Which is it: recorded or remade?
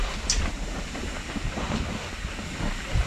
recorded